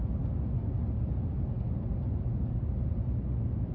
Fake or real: real